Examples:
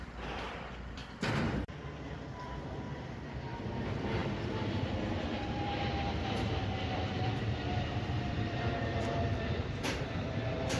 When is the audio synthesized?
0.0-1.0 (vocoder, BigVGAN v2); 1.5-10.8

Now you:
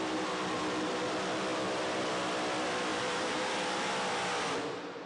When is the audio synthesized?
2.9-3.9 (vocoder, BigVGAN v2)